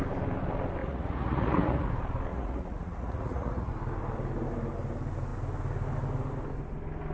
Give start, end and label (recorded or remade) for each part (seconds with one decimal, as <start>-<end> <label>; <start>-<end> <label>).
0.0-0.8 recorded; 0.8-1.9 remade; 1.9-2.3 recorded; 2.3-3.7 remade; 3.7-7.1 recorded